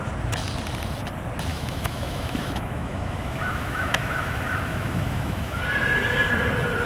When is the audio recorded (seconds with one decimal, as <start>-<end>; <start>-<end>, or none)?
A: 0.0-1.5; 5.6-6.9